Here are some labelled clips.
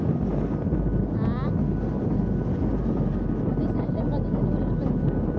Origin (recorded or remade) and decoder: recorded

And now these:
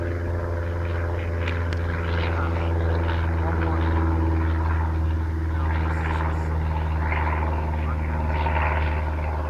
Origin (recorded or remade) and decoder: recorded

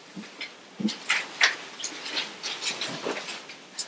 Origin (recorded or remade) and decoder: recorded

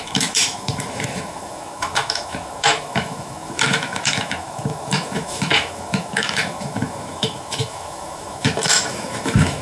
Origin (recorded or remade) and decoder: remade, autoencoder, DAC-VAE